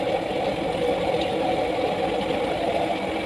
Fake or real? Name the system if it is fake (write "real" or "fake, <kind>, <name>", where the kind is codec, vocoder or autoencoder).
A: real